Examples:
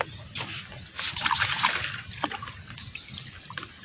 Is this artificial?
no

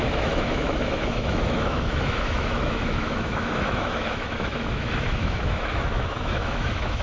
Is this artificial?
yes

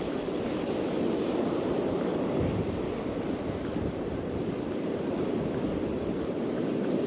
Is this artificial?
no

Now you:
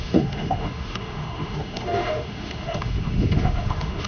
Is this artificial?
yes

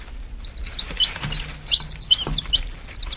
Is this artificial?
no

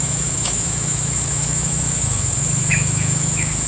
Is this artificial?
yes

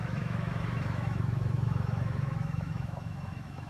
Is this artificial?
yes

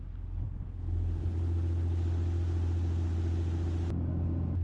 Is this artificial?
no